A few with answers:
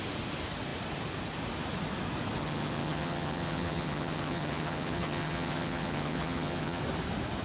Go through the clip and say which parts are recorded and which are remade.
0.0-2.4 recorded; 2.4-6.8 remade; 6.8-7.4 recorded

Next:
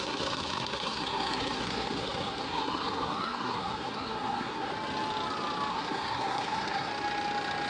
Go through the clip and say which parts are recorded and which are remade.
0.0-4.7 remade; 4.7-5.7 recorded; 5.7-6.9 remade; 6.9-7.7 recorded

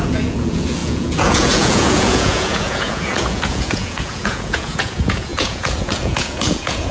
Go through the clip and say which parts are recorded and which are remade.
0.0-6.9 remade

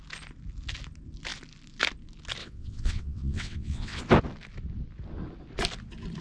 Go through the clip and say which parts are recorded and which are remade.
0.0-2.4 recorded; 2.4-4.0 remade; 4.0-6.2 recorded

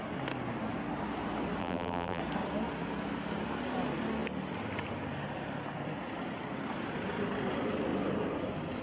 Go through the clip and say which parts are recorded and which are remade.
0.0-1.6 recorded; 1.6-2.2 remade; 2.2-8.8 recorded

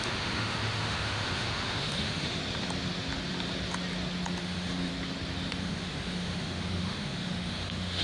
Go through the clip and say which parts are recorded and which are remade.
0.0-2.4 remade; 2.4-4.4 recorded; 4.4-4.9 remade; 4.9-5.6 recorded; 5.6-8.0 remade

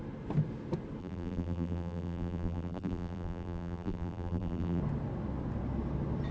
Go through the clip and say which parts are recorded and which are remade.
0.0-1.0 recorded; 1.0-4.8 remade; 4.8-6.3 recorded